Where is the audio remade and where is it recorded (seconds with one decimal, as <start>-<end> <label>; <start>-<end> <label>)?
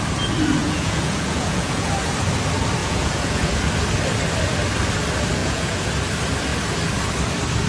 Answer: 0.0-0.6 recorded; 0.6-1.9 remade; 1.9-2.8 recorded; 2.8-3.5 remade; 3.5-5.4 recorded; 5.4-5.9 remade; 5.9-7.7 recorded